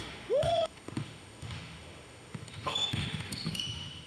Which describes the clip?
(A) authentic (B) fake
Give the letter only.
B